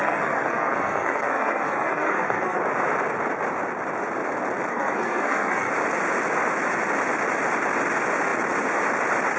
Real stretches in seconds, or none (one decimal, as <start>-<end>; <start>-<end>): 2.6-4.7; 5.7-9.4